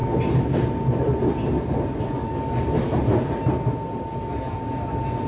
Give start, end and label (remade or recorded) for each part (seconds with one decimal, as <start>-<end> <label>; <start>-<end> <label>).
0.0-5.3 recorded